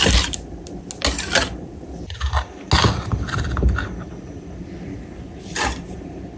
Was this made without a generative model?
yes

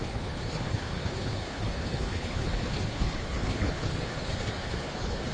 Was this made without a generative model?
no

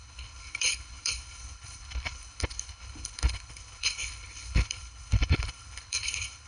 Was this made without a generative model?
no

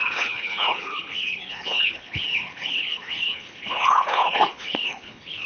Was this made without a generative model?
no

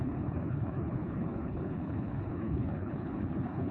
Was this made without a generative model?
no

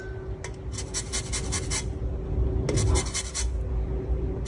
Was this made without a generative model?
yes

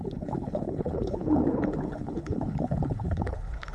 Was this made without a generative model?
no